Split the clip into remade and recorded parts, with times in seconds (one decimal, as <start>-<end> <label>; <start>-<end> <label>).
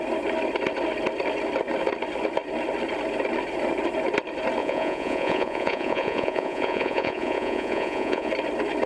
0.0-4.6 recorded; 4.6-8.3 remade; 8.3-8.9 recorded